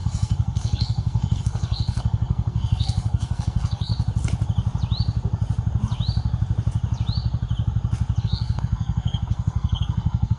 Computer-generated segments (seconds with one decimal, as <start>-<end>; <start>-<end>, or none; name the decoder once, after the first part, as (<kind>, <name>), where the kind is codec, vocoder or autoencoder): 0.0-3.9 (codec, SNAC); 8.2-10.4